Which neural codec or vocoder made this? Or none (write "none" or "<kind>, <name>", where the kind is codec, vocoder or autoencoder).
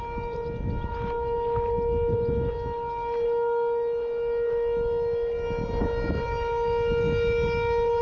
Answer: none